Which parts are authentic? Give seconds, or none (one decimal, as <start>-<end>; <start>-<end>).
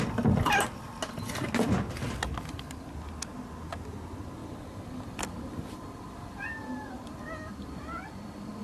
0.0-4.4; 6.9-8.6